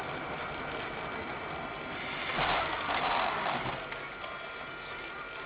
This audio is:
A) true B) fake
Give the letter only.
A